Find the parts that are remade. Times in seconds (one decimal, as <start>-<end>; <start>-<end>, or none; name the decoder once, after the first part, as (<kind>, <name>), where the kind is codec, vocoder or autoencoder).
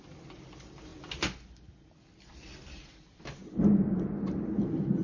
none